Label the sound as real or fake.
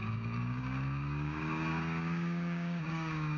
fake